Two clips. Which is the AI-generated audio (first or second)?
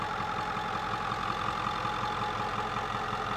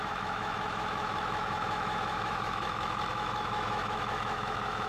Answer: second